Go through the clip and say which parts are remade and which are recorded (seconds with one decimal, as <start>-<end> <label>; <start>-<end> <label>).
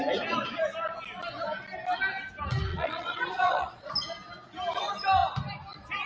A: 0.0-2.7 recorded; 2.7-3.9 remade; 3.9-6.1 recorded